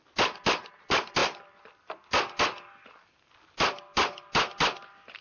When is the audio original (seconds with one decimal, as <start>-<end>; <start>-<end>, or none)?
0.0-5.2